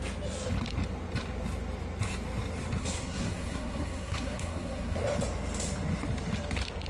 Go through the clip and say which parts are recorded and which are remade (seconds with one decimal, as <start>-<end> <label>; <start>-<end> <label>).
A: 0.0-2.8 recorded; 2.8-5.0 remade; 5.0-6.9 recorded